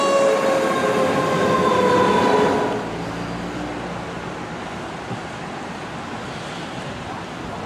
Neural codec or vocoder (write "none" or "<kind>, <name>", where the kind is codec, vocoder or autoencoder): none